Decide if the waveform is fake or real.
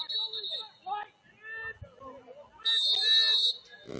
real